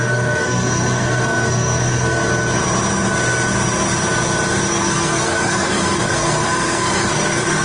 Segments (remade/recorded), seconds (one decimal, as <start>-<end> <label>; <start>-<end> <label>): 0.0-2.2 remade; 2.2-4.7 recorded; 4.7-7.6 remade